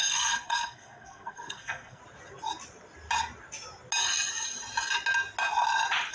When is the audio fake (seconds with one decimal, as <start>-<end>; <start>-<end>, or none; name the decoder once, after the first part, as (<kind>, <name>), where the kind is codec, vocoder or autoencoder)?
0.0-2.0 (codec, SNAC)